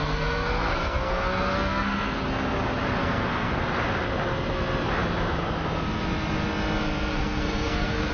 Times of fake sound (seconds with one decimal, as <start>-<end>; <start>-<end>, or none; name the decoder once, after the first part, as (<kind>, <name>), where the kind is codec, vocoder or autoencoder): 0.0-2.2 (codec, SNAC); 3.0-3.6; 7.1-8.1

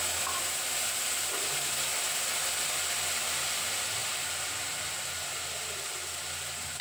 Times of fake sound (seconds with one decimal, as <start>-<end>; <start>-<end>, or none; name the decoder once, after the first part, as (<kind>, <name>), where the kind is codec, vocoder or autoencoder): none

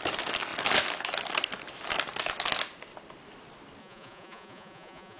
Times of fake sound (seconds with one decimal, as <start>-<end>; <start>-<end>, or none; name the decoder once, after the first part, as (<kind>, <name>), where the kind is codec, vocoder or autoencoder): 3.8-5.2 (vocoder, Vocos)

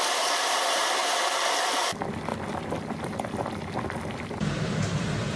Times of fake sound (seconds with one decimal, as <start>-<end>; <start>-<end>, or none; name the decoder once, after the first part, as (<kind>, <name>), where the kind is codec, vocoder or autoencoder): 0.0-1.0 (vocoder, BigVGAN v2); 1.8-2.3; 3.0-5.4

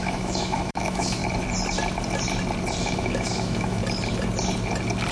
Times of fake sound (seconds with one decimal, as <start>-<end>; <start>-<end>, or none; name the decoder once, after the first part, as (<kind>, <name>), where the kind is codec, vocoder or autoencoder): 0.0-1.2 (autoencoder, DAC-VAE); 2.8-3.8

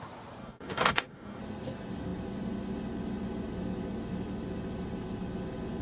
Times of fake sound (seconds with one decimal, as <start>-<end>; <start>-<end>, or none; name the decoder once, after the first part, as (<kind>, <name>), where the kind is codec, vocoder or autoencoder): 0.4-1.4 (codec, DAC)

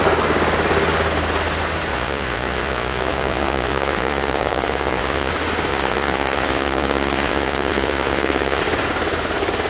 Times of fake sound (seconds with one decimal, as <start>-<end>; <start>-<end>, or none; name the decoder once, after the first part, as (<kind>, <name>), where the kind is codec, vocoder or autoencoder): 1.9-5.3 (vocoder, Vocos); 5.7-8.6

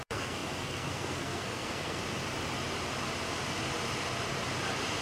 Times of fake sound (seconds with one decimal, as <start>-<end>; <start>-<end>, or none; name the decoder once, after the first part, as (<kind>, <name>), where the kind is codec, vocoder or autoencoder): 0.0-2.0 (codec, SNAC)